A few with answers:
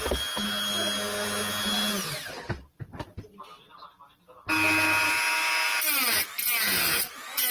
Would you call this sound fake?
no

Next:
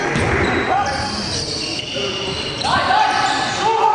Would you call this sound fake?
no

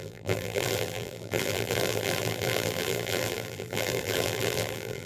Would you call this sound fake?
yes